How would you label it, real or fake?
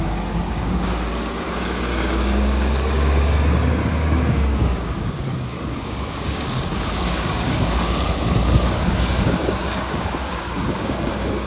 fake